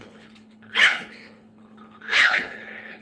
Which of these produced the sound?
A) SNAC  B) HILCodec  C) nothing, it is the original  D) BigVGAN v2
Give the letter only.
B